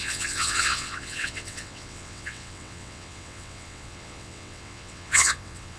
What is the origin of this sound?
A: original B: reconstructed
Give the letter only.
B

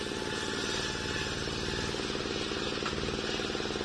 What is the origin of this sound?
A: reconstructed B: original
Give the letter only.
B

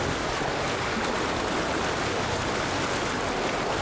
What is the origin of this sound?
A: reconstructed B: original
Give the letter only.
B